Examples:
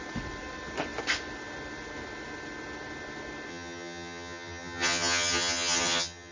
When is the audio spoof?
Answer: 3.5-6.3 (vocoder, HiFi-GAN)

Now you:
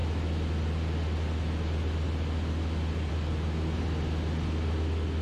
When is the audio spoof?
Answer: none

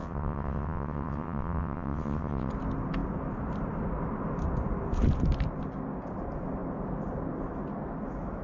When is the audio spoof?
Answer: 0.0-2.5 (vocoder, WaveNeXt)

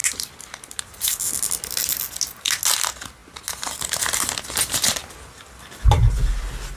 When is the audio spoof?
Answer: none

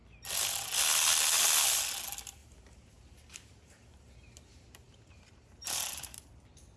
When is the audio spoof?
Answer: 2.4-6.3 (vocoder, BigVGAN v2)

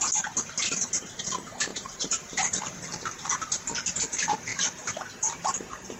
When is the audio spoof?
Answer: 1.7-2.6 (vocoder, BigVGAN v2)